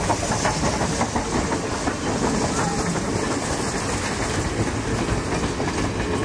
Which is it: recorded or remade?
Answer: recorded